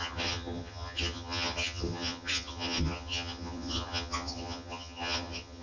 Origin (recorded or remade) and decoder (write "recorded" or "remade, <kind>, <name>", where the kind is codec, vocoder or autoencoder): remade, vocoder, HiFi-GAN